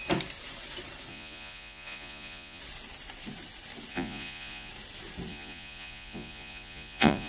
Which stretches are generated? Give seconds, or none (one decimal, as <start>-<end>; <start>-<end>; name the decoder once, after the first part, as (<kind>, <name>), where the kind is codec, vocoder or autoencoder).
1.1-2.6 (vocoder, Vocos); 3.9-4.7; 5.3-7.3